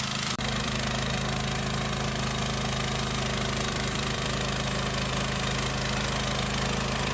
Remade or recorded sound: remade